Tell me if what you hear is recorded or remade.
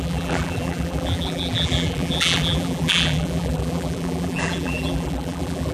remade